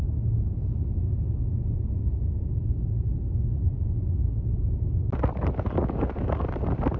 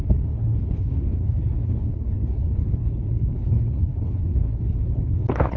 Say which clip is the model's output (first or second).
second